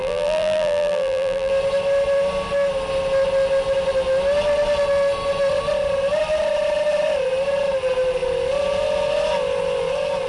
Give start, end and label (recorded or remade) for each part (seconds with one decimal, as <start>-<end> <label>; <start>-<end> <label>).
0.0-1.5 remade; 1.5-10.3 recorded